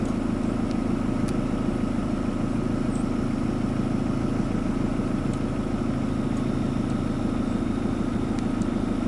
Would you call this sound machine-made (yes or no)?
no